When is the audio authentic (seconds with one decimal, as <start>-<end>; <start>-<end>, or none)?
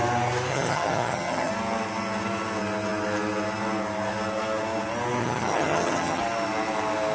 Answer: 0.0-0.5; 1.5-5.2; 6.2-7.1